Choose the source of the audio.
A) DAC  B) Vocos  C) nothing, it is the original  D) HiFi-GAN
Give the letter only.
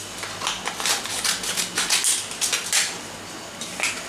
C